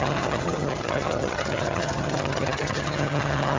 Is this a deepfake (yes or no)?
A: yes